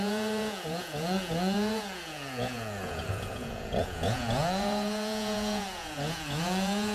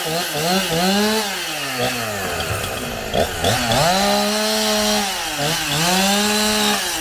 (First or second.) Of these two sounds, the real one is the second